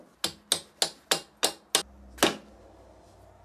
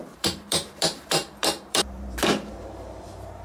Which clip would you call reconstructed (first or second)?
second